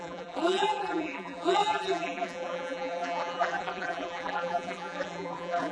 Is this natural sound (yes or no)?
no